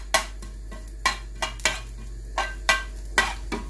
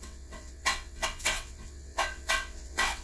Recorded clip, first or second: first